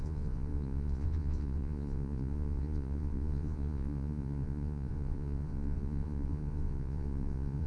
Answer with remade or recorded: remade